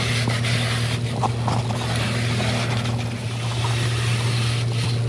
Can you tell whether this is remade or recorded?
recorded